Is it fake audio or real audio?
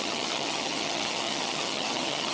fake